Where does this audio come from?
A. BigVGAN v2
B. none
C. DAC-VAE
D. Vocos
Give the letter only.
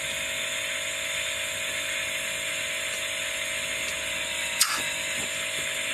B